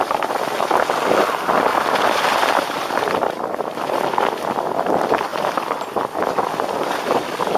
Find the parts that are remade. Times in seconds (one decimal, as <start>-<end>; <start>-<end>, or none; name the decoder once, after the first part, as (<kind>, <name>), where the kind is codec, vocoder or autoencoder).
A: 1.7-3.9 (vocoder, BigVGAN v2); 5.3-7.6